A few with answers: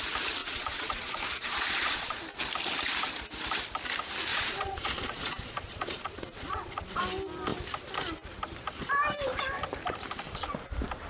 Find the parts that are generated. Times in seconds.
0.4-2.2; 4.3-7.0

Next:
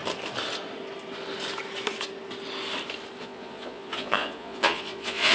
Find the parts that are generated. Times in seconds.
3.2-5.3

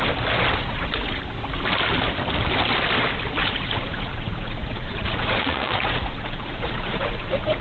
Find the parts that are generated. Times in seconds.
0.6-1.2; 3.4-7.6

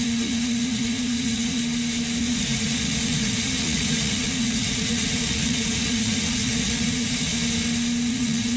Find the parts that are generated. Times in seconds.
0.0-1.6; 2.2-7.3; 8.1-8.6

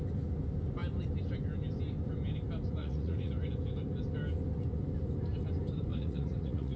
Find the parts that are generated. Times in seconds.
2.8-3.3; 5.9-6.8

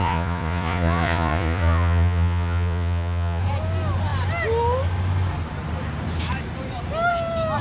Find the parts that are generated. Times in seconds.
0.0-3.4

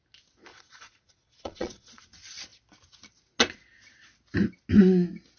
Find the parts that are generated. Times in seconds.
0.5-2.0

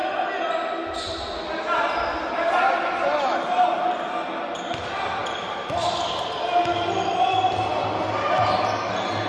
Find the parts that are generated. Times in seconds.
none